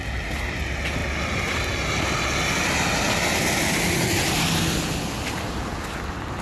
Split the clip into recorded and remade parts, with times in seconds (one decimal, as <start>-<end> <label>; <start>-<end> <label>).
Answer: 0.0-6.4 recorded